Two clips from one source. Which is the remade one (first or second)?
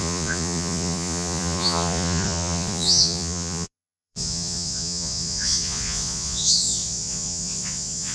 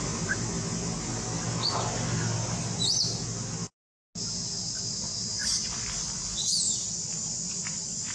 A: first